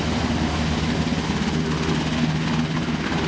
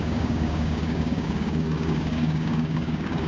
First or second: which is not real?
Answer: second